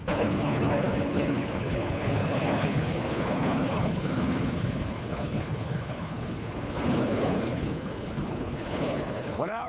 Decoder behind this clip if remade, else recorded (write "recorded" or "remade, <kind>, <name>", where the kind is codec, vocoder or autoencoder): remade, codec, HILCodec